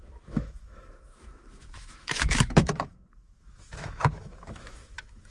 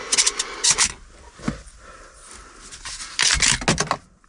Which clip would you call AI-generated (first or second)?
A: first